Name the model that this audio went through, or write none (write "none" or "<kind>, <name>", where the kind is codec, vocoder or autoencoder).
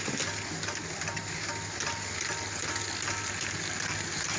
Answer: none